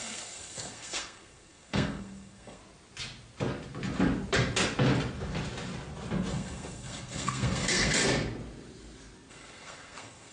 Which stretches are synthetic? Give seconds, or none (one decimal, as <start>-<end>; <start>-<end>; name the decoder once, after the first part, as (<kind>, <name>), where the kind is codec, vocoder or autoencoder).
0.0-2.6 (codec, SNAC); 6.3-8.0; 9.3-10.3